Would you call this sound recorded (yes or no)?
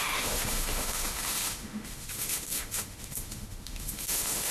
no